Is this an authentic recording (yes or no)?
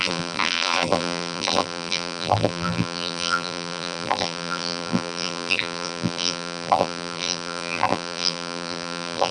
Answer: no